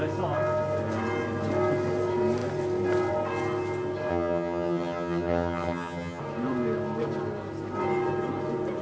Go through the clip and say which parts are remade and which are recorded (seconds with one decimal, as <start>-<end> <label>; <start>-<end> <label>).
0.0-4.1 recorded; 4.1-6.2 remade; 6.2-8.8 recorded